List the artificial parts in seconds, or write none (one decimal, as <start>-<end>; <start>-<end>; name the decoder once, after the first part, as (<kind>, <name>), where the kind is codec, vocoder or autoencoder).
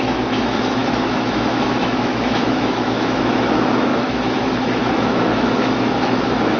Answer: 0.0-6.6 (autoencoder, DAC-VAE)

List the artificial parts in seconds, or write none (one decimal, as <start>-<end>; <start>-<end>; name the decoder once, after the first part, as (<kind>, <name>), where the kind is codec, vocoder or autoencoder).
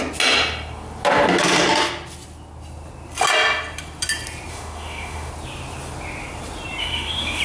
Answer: 4.5-5.3 (autoencoder, DAC-VAE); 6.8-7.4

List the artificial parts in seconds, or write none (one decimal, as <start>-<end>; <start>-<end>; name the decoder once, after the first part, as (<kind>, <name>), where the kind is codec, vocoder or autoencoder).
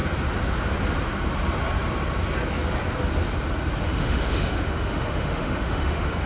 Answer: 3.8-6.3 (autoencoder, DAC-VAE)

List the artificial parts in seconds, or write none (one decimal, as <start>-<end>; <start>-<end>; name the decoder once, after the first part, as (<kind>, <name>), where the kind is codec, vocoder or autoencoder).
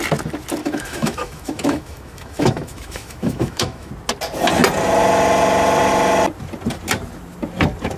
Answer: 0.6-3.9 (autoencoder, DAC-VAE)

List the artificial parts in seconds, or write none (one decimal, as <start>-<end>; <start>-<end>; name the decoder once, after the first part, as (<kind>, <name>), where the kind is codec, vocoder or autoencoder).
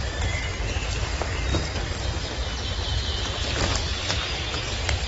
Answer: none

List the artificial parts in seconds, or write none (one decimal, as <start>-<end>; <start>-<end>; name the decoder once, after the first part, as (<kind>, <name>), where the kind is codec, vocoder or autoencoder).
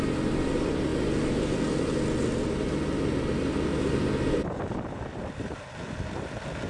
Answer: none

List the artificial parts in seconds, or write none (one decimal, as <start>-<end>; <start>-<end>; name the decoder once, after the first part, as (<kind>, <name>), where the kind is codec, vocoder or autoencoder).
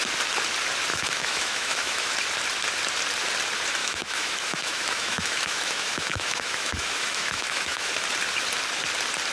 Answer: 0.9-2.1 (autoencoder, DAC-VAE); 3.8-7.9